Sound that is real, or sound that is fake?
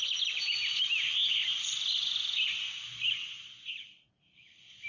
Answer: real